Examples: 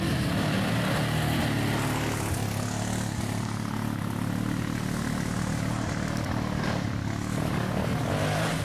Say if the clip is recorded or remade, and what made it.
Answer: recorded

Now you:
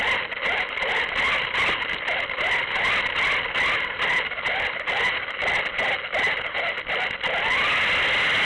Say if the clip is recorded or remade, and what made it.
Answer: recorded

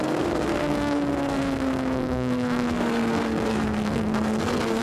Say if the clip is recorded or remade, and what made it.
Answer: remade, codec, SNAC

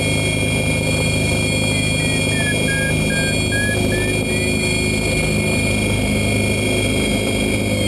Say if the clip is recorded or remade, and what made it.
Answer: recorded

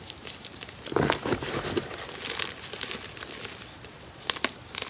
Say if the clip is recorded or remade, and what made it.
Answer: recorded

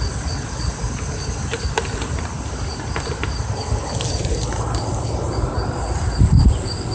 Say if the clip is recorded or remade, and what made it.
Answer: recorded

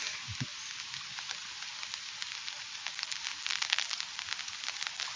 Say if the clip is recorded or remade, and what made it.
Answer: recorded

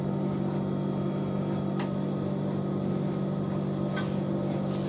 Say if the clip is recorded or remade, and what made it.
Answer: recorded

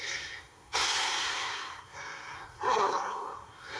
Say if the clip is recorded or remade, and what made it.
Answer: remade, codec, SNAC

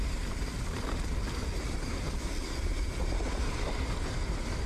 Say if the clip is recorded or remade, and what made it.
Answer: recorded